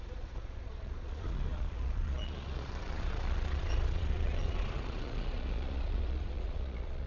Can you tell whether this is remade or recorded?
remade